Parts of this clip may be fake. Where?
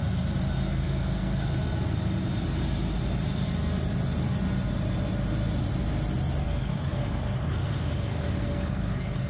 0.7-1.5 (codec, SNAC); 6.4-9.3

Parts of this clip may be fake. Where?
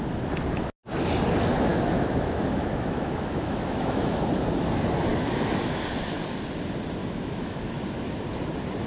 1.7-4.2 (autoencoder, DAC-VAE); 5.1-5.8; 7.0-7.6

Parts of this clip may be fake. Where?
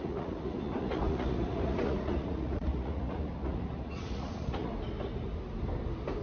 0.0-4.7 (vocoder, Vocos)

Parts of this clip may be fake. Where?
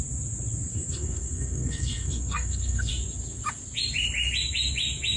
0.7-2.9 (codec, SNAC)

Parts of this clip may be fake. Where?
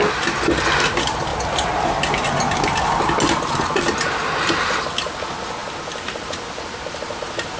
none